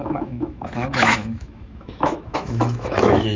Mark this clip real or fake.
fake